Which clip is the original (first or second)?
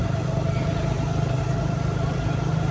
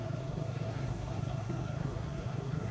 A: first